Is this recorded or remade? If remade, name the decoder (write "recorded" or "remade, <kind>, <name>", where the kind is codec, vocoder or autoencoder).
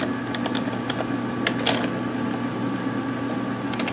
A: recorded